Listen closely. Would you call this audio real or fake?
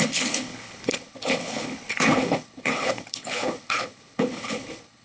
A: fake